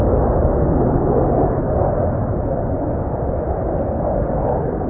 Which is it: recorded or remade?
recorded